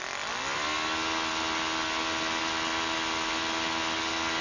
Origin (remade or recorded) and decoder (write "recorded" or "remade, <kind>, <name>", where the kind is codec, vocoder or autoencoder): recorded